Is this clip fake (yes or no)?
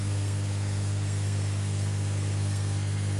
yes